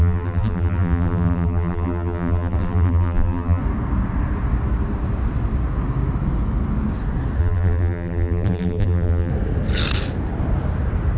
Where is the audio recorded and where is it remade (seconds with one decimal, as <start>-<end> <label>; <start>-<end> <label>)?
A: 0.0-3.6 remade; 3.6-7.4 recorded; 7.4-9.3 remade; 9.3-11.2 recorded